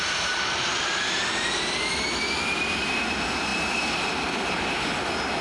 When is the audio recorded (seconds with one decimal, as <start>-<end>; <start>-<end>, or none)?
0.0-5.4